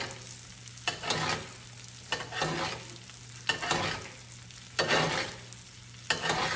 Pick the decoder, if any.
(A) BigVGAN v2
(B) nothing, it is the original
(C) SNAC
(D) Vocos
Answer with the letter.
B